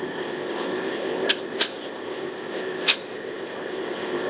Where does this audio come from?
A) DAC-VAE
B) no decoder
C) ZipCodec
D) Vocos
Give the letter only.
C